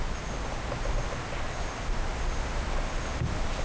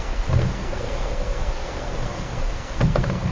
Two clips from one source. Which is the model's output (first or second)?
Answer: second